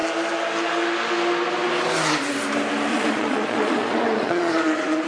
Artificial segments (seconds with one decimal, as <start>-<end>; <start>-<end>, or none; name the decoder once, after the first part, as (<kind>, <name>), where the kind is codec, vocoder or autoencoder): 2.9-5.1 (vocoder, Vocos)